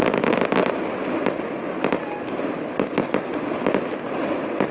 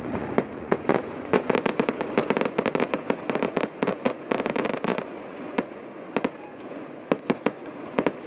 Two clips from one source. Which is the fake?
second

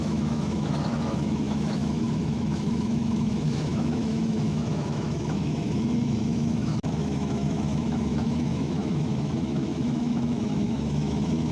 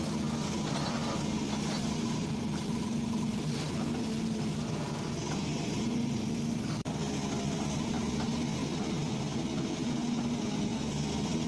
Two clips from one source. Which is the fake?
first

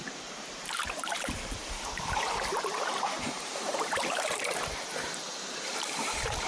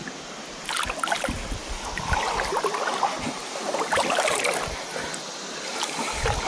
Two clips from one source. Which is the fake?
first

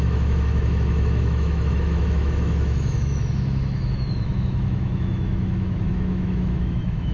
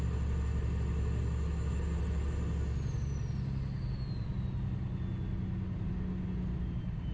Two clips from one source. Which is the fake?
first